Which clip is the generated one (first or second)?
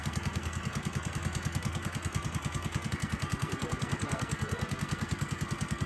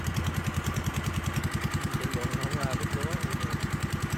first